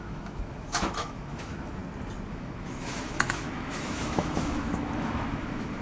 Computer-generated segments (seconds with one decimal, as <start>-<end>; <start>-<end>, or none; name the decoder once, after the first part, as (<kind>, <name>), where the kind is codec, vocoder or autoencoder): 0.0-1.8 (autoencoder, DAC-VAE); 2.3-5.8